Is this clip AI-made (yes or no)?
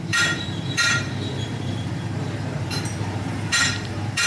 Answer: yes